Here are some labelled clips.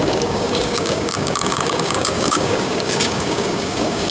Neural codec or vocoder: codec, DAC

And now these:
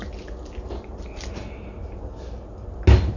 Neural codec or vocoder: none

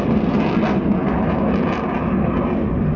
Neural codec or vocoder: none